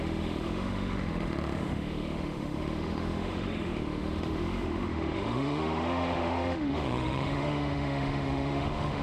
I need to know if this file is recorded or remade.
remade